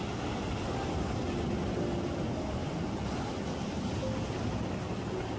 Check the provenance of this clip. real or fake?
real